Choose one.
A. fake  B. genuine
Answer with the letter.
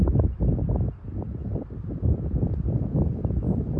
B